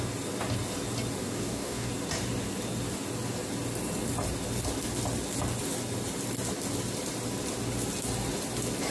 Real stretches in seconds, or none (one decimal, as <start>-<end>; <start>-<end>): 0.0-1.2; 1.9-8.9